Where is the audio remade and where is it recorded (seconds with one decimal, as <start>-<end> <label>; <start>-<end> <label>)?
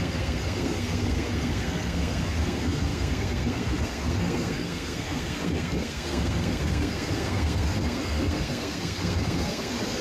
0.0-10.0 remade